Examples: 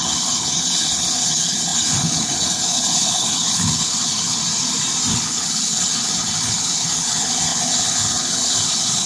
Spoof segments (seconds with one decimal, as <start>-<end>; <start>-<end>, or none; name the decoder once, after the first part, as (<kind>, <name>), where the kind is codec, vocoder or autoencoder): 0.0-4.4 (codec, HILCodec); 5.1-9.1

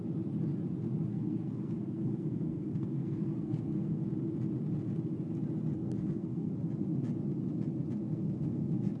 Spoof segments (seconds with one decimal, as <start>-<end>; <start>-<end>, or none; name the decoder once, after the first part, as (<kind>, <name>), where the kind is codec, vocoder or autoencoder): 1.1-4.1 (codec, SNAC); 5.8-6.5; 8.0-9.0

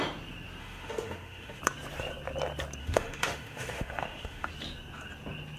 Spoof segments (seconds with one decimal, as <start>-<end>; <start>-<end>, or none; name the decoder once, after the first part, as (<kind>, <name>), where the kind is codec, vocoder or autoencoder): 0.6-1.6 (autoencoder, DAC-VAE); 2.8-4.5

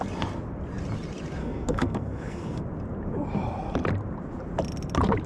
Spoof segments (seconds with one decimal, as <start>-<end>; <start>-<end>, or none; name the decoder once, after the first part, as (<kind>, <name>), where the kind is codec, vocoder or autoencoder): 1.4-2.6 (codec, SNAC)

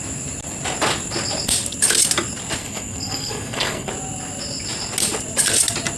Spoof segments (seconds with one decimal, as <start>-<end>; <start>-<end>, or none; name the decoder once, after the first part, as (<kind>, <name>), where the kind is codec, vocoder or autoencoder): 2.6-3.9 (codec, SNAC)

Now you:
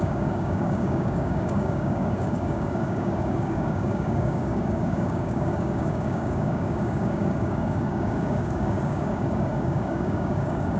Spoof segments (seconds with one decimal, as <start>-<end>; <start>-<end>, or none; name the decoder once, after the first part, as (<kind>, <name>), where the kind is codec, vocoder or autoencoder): 0.0-10.8 (codec, DAC)